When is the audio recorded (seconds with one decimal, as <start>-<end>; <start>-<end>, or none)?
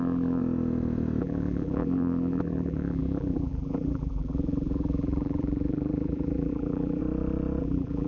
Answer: 0.4-1.2; 7.0-7.6